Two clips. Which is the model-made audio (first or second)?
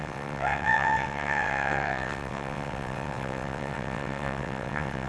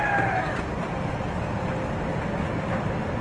first